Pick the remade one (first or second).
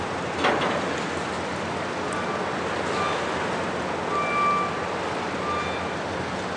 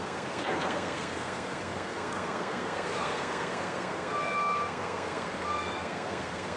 second